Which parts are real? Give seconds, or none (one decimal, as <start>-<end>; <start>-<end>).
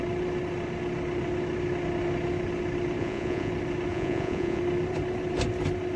0.0-3.0; 3.5-3.9; 4.6-6.0